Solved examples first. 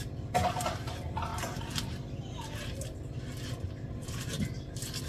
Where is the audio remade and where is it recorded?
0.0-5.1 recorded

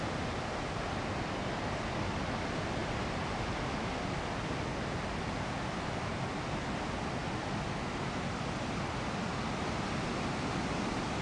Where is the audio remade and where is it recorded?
0.0-11.2 recorded

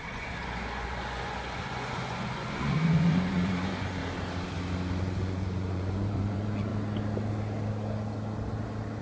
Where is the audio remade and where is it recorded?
0.0-4.0 remade; 4.0-5.0 recorded; 5.0-6.7 remade; 6.7-9.0 recorded

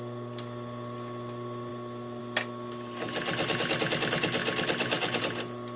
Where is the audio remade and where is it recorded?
0.0-5.8 recorded

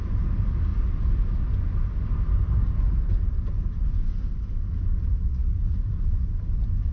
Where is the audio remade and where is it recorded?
0.0-6.9 recorded

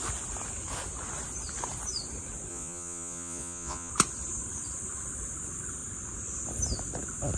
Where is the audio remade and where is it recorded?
0.0-2.5 recorded; 2.5-3.9 remade; 3.9-7.4 recorded